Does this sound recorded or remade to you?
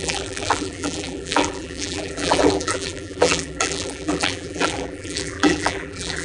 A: remade